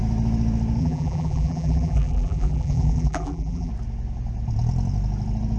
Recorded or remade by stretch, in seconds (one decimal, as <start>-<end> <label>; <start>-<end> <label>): 0.0-0.8 recorded; 0.8-3.7 remade; 3.7-5.6 recorded